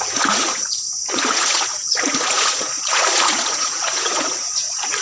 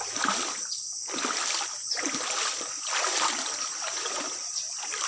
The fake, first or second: first